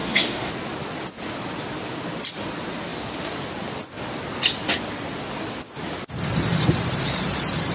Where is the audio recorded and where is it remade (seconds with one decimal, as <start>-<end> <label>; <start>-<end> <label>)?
0.0-0.5 remade; 0.5-7.7 recorded